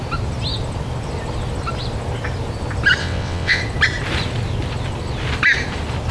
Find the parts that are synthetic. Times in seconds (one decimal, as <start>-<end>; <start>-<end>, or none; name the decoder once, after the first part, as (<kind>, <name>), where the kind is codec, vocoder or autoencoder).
3.0-3.6 (vocoder, WaveNeXt)